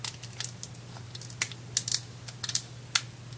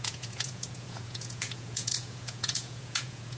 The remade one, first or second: second